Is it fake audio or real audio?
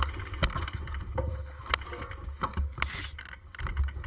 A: real